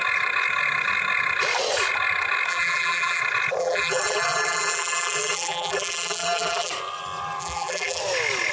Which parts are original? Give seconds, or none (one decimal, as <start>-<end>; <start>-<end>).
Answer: 0.0-2.5; 3.2-3.6; 6.7-7.4; 8.0-8.5